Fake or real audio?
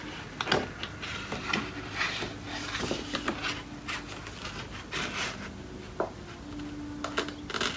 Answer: real